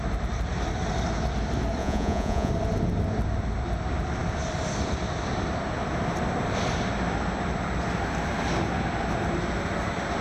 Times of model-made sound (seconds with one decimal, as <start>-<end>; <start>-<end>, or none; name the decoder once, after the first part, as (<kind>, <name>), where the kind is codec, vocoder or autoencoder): 1.8-2.5 (vocoder, Vocos)